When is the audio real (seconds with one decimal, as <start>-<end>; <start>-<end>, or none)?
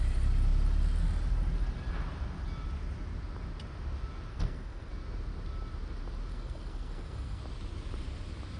0.0-4.3; 4.9-6.3; 7.4-8.6